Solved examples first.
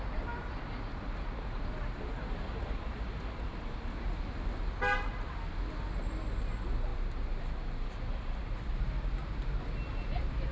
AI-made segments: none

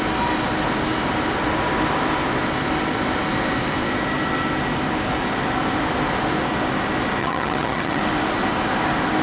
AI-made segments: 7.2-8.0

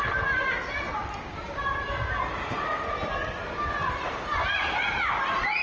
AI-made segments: none